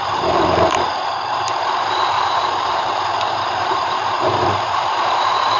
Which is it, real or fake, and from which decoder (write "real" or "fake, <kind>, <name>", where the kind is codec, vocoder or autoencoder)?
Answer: fake, vocoder, BigVGAN v2